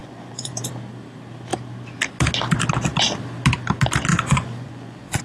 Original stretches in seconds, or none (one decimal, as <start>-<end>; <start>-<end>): 0.7-4.1